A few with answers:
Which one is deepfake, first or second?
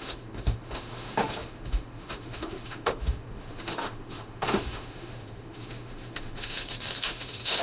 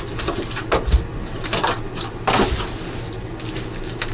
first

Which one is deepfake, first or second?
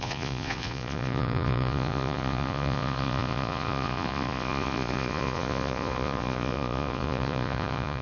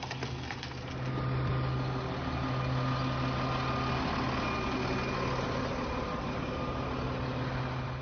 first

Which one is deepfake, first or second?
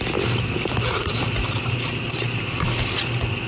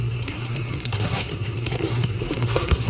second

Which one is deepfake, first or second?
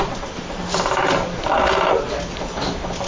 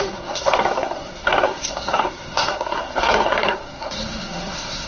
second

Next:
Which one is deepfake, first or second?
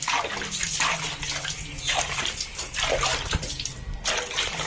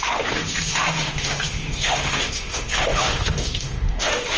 second